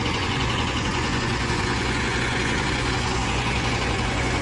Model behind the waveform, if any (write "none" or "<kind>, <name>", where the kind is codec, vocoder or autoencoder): vocoder, Vocos